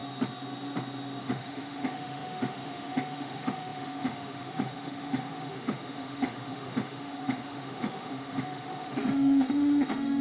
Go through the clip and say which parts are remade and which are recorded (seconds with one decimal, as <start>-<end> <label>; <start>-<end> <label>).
0.0-1.2 recorded; 1.2-10.2 remade